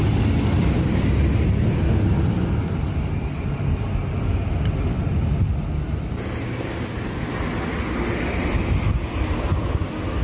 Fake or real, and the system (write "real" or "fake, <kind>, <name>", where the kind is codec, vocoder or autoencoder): real